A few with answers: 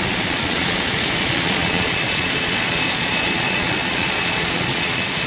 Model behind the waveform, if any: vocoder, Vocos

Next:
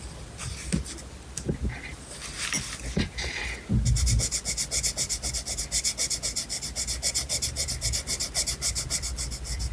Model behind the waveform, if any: none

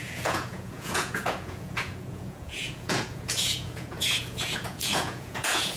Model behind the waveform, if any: vocoder, Vocos